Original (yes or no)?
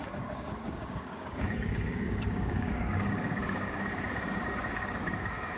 no